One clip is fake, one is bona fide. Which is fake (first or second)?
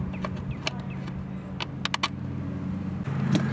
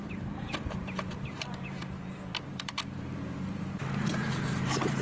second